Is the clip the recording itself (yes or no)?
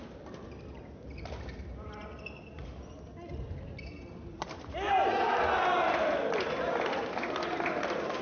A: yes